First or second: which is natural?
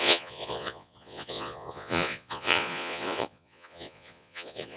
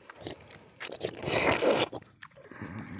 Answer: second